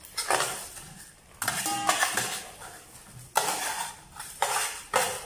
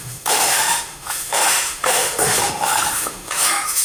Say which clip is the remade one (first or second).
second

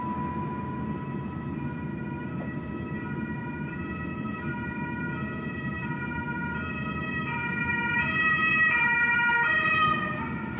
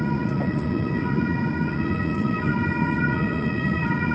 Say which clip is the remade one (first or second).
second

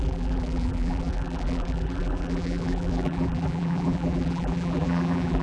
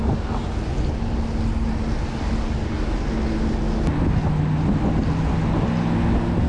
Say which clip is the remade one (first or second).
first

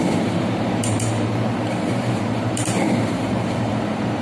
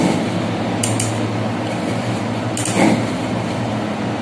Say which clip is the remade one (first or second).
first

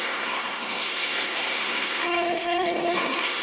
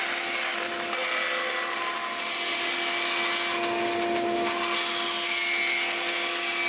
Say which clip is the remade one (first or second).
first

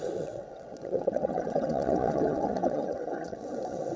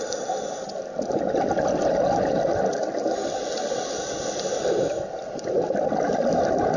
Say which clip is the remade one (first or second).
first